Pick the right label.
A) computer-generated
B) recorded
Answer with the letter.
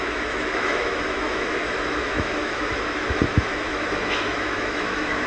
A